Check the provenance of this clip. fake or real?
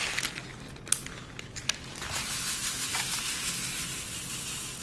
real